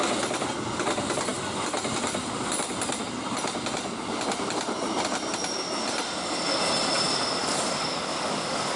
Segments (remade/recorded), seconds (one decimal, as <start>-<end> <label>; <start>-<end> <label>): 0.0-7.4 recorded; 7.4-8.8 remade